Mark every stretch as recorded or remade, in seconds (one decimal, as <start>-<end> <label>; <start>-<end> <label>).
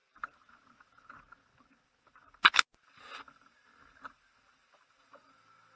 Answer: 0.0-5.8 recorded